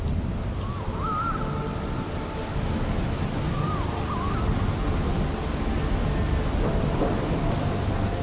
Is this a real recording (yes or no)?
yes